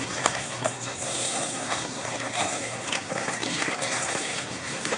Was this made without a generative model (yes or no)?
no